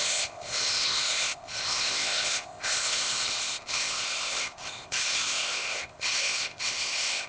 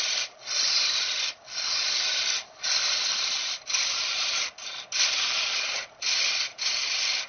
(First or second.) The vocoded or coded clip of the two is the first